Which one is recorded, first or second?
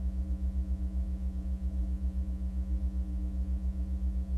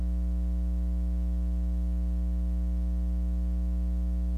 second